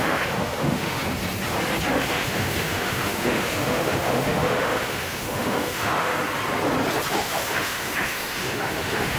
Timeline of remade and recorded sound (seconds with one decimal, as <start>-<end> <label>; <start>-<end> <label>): 0.0-1.0 remade; 1.0-1.9 recorded; 1.9-6.1 remade; 6.1-7.1 recorded; 7.1-9.2 remade